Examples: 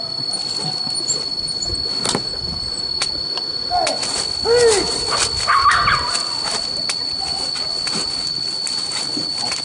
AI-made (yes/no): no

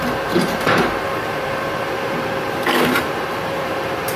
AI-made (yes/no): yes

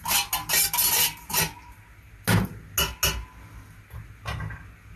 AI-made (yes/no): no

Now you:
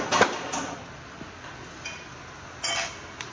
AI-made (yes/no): no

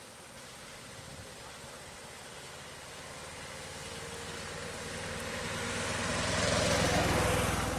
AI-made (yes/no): no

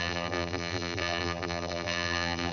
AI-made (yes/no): yes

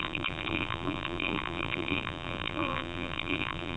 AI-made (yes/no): yes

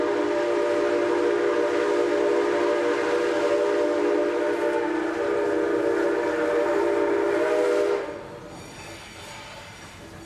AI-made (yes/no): no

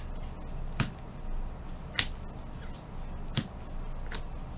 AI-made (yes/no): no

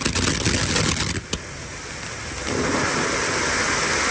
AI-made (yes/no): no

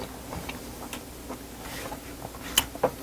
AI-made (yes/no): no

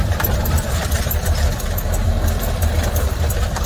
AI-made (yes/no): yes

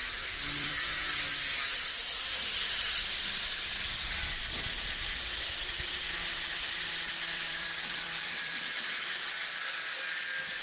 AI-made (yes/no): yes